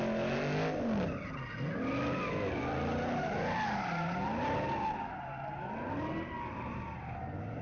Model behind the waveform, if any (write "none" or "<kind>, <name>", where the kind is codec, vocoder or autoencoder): none